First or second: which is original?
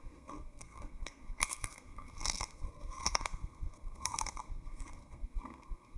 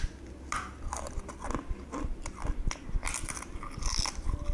second